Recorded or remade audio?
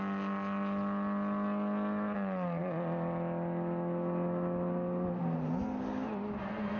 recorded